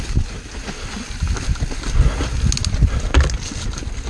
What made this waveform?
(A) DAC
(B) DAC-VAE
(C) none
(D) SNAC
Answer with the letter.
C